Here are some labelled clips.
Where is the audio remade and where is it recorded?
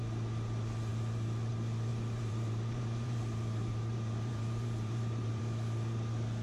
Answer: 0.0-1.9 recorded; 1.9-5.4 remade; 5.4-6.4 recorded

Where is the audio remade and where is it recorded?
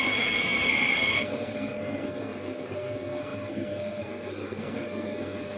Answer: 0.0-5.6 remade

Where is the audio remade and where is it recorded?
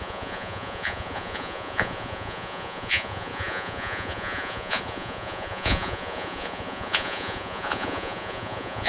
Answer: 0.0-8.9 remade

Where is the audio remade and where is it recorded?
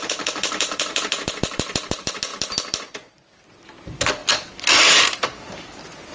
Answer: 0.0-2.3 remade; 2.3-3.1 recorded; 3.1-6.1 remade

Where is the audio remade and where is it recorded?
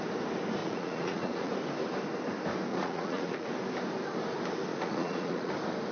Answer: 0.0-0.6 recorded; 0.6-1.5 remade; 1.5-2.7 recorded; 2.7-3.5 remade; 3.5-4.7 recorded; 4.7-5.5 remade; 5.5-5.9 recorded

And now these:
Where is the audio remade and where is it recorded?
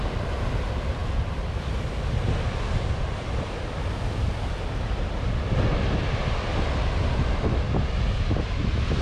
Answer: 0.0-9.0 recorded